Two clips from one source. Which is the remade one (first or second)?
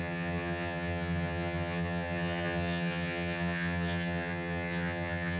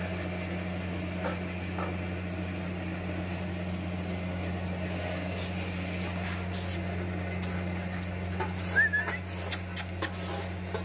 first